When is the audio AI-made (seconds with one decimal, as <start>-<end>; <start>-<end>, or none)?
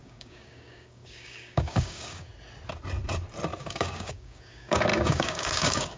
0.0-2.3; 3.6-6.0